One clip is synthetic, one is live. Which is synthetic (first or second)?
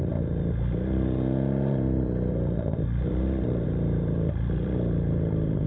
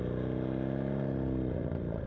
first